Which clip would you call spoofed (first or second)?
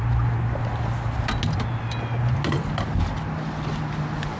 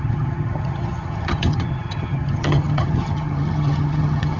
second